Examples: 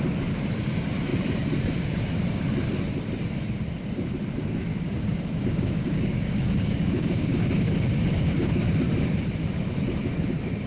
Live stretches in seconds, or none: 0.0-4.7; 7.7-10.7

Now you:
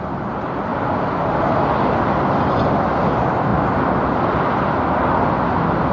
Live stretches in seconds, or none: 0.0-5.9

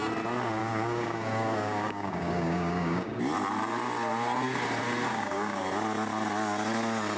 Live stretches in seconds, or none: 0.0-0.6; 3.2-5.1; 5.6-7.2

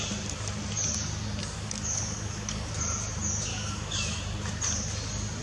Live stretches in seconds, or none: 0.0-1.4; 2.7-3.5; 4.2-5.4